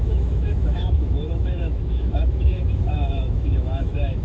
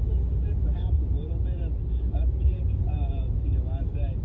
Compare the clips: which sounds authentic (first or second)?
second